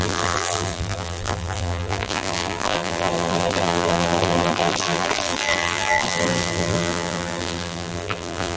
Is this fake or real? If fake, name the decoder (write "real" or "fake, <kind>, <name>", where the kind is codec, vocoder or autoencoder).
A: fake, vocoder, BigVGAN v2